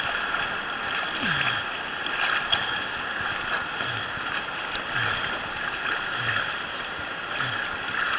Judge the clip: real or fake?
real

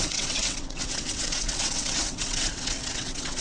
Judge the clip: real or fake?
fake